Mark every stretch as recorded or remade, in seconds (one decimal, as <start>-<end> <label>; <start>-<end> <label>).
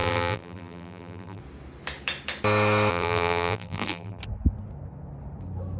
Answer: 0.0-1.4 remade; 1.4-2.9 recorded; 2.9-4.2 remade; 4.2-5.8 recorded